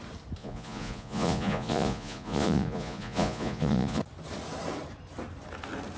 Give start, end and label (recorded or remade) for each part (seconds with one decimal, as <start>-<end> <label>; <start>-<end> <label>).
0.0-0.4 recorded; 0.4-4.0 remade; 4.0-6.0 recorded